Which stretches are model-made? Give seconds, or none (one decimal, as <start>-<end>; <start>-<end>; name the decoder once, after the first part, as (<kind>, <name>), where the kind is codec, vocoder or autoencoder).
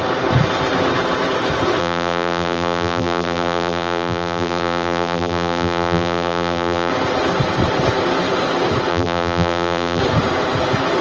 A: 1.8-6.9 (vocoder, BigVGAN v2); 8.9-10.0